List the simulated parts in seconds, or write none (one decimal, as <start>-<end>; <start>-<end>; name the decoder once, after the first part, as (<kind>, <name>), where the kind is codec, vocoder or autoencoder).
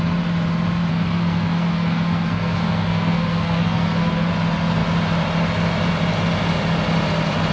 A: 0.9-4.3 (codec, SNAC)